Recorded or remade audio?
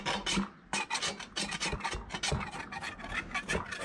recorded